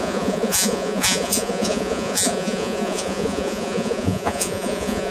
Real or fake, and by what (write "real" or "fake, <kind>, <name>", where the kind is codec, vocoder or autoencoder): fake, vocoder, Vocos